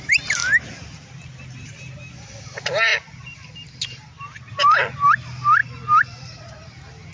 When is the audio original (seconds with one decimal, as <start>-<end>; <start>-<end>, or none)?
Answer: 0.0-7.1